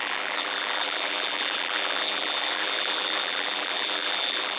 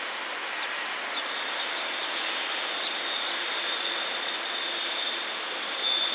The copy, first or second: first